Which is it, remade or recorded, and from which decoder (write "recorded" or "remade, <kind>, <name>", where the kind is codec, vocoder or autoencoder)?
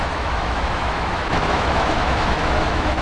remade, autoencoder, DAC-VAE